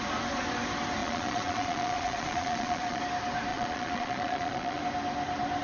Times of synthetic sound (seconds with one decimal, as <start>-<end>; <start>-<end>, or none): 1.0-3.0; 3.5-4.8